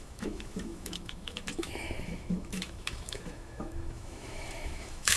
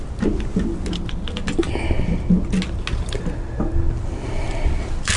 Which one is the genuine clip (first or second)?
second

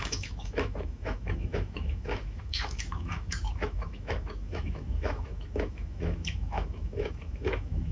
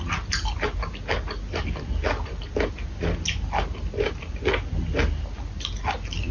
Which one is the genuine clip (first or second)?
second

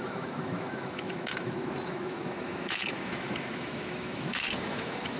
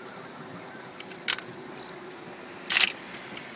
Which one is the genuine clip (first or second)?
second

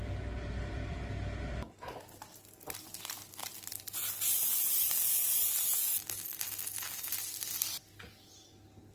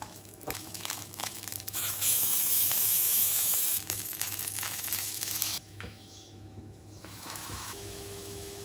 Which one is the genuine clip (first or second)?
first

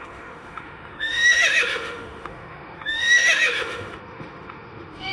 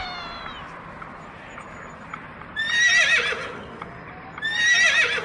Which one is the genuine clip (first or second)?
second